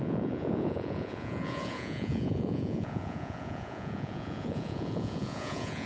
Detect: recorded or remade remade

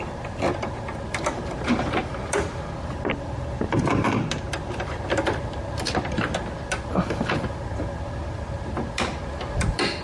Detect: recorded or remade recorded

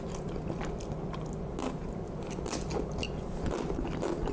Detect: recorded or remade recorded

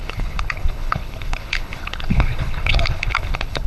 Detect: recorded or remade remade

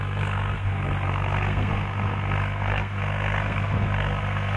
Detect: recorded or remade remade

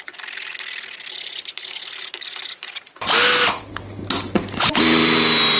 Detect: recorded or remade recorded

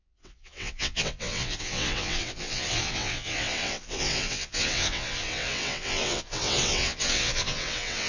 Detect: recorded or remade remade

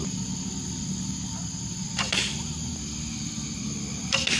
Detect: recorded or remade recorded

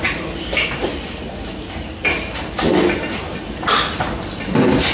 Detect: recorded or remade recorded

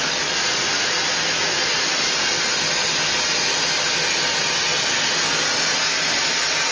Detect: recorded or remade recorded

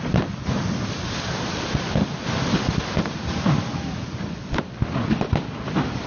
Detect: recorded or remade recorded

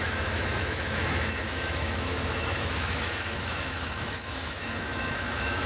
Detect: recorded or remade remade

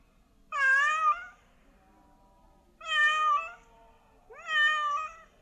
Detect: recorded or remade recorded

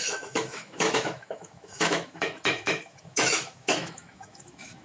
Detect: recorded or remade remade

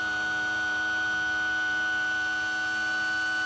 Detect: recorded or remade recorded